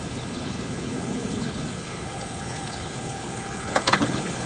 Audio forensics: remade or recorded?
remade